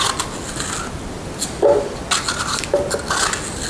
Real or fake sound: real